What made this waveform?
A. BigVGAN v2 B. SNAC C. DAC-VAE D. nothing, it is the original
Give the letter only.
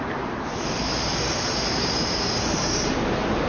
A